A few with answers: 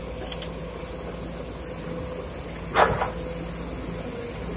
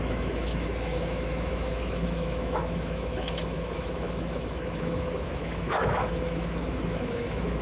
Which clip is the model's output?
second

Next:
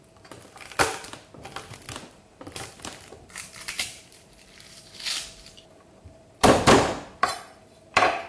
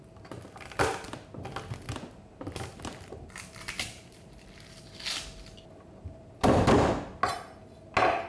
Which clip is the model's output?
first